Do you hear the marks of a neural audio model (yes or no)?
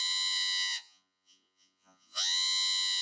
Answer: yes